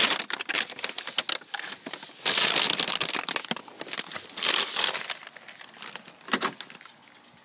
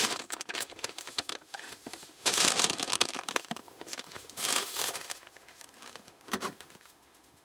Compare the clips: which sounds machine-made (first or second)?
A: second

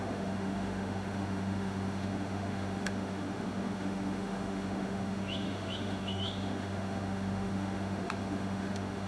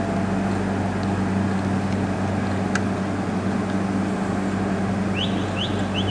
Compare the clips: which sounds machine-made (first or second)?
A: first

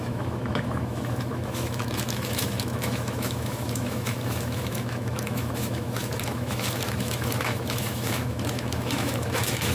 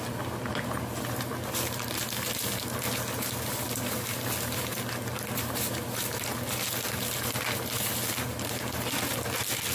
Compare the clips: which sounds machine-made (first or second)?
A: first